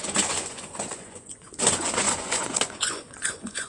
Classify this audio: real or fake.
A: fake